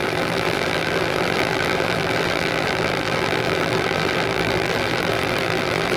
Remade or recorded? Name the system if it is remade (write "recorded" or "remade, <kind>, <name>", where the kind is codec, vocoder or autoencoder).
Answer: remade, vocoder, BigVGAN v2